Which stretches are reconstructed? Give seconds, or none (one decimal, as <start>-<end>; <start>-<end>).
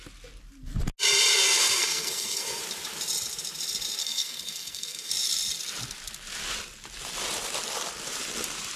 1.3-2.6; 4.0-5.1